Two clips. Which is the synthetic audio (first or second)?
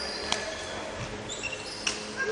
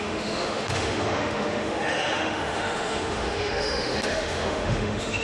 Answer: second